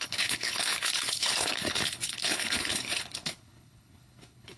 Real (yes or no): no